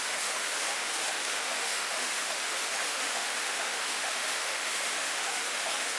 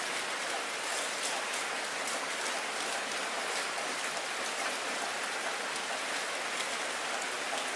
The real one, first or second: second